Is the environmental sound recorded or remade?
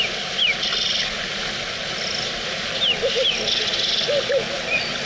recorded